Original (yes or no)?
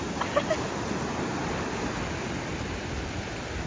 yes